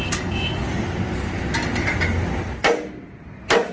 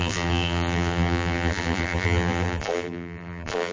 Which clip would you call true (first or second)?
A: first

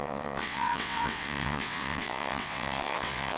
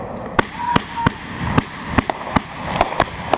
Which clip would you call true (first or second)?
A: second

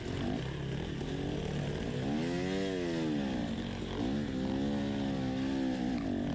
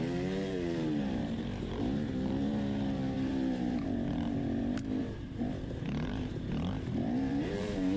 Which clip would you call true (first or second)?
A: first